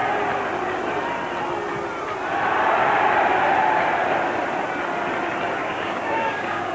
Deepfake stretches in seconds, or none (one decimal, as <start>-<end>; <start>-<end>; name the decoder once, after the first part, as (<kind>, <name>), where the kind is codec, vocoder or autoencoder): 5.6-6.7 (codec, DAC)